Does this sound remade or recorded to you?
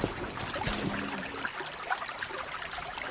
recorded